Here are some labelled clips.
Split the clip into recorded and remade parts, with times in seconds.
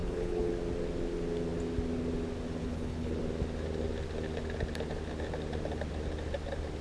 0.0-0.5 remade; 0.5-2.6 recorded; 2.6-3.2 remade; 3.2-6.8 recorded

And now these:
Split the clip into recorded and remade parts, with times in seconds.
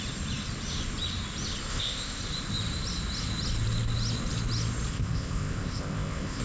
0.0-1.7 recorded; 1.7-2.2 remade; 2.2-4.9 recorded; 4.9-6.4 remade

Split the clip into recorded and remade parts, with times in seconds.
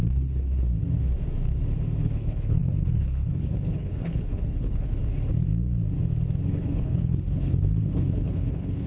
0.0-0.7 remade; 0.7-2.0 recorded; 2.0-5.0 remade; 5.0-6.5 recorded; 6.5-8.9 remade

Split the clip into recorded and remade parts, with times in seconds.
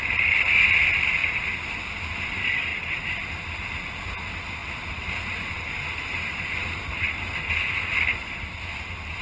0.0-9.2 recorded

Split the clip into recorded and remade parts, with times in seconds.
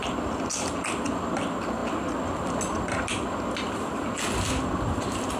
0.0-5.4 recorded